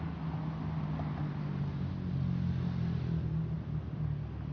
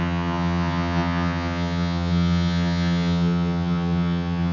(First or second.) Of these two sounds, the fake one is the second